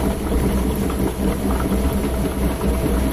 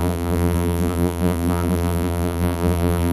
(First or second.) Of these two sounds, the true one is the first